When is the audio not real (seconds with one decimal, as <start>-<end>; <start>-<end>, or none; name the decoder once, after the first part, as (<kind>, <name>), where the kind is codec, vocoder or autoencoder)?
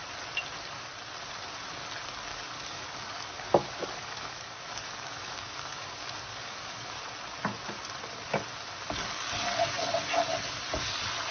2.3-7.0 (codec, DAC)